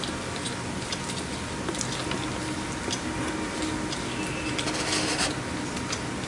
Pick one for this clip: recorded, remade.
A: recorded